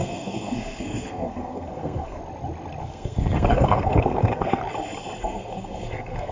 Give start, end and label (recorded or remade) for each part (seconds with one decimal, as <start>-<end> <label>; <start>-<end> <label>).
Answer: 0.0-2.2 remade; 2.2-2.8 recorded; 2.8-4.6 remade; 4.6-5.2 recorded; 5.2-6.3 remade